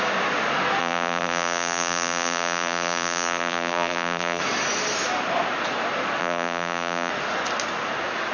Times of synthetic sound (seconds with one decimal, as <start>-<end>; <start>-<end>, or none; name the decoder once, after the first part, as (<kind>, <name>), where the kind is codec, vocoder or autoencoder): 0.8-4.4 (vocoder, BigVGAN v2); 6.2-7.1